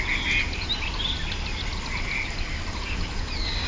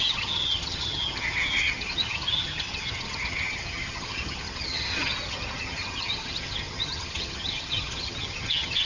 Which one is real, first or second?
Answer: first